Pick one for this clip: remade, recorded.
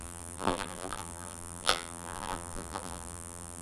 remade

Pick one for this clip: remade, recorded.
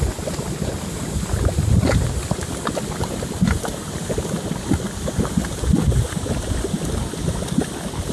recorded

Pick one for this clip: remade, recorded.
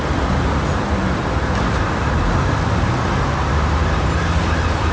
recorded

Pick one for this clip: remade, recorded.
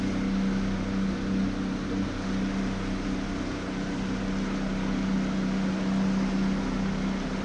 recorded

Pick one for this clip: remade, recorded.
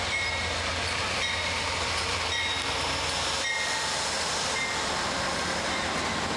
recorded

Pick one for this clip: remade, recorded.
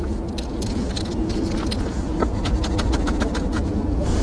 recorded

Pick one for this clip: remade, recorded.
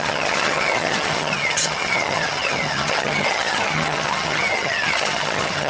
remade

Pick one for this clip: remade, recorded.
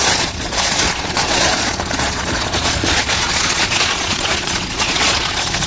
remade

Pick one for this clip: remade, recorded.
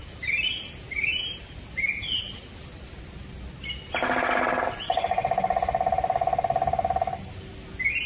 recorded